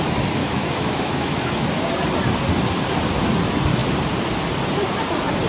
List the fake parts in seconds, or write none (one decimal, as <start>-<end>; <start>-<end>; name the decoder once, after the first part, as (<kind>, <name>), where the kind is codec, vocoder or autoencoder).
0.4-1.7 (autoencoder, DAC-VAE)